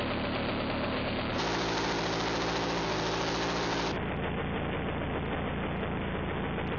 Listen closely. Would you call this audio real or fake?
real